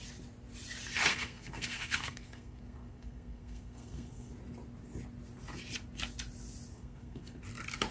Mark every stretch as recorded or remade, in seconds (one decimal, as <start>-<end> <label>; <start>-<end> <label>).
0.0-1.1 recorded; 1.1-4.3 remade; 4.3-6.7 recorded; 6.7-7.4 remade; 7.4-7.9 recorded